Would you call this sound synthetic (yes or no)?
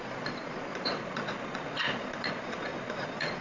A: yes